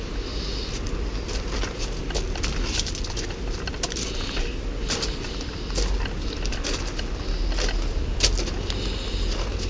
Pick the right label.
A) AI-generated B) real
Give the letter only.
B